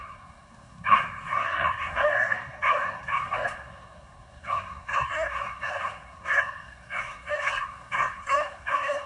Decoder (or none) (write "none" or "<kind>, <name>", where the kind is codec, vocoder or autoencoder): codec, SNAC